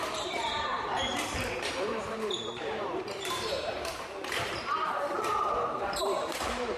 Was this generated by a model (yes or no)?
yes